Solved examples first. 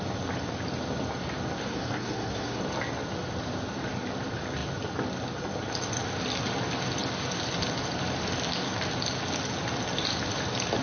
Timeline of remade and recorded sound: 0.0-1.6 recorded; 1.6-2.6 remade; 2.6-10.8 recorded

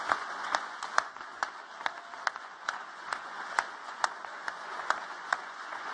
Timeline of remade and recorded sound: 0.0-1.6 remade; 1.6-2.4 recorded; 2.4-5.9 remade